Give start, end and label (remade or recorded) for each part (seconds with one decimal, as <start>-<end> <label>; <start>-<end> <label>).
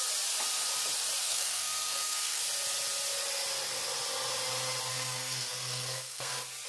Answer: 0.0-1.2 recorded; 1.2-2.4 remade; 2.4-4.9 recorded; 4.9-6.3 remade; 6.3-6.7 recorded